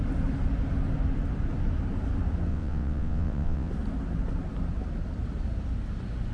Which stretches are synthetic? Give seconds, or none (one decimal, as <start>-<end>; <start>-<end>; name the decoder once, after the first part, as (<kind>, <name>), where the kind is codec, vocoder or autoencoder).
2.5-3.7 (vocoder, WaveNeXt)